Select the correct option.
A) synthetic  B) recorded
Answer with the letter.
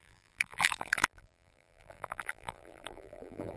A